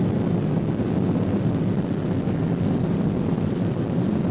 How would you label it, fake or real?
real